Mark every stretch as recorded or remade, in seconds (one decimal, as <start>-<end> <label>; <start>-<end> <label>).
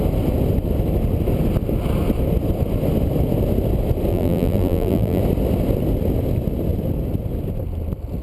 0.0-4.1 recorded; 4.1-5.2 remade; 5.2-8.2 recorded